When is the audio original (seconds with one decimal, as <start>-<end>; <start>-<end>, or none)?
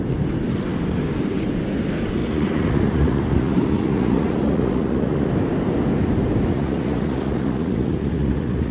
0.0-2.2; 5.3-6.5